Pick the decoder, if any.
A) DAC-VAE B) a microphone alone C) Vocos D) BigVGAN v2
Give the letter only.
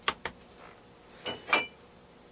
D